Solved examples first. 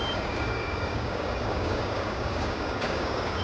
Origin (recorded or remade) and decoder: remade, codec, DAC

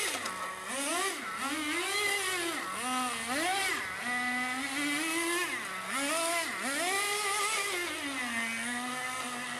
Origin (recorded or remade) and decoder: recorded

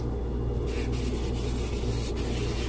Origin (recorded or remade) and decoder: recorded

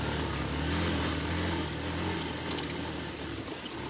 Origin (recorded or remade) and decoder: recorded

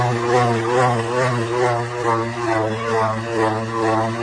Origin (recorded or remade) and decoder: recorded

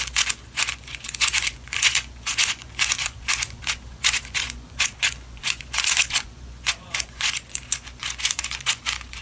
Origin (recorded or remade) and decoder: remade, vocoder, Vocos